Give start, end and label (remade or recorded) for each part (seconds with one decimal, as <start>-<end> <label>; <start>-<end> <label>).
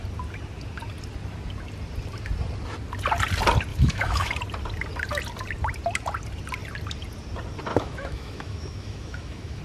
0.0-3.7 recorded; 3.7-4.3 remade; 4.3-7.7 recorded; 7.7-9.6 remade